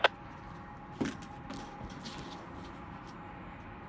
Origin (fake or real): real